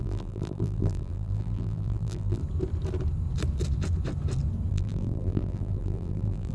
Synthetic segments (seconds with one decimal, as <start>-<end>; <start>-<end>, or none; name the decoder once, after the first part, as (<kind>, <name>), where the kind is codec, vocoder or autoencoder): 0.0-2.4 (vocoder, BigVGAN v2); 4.7-6.5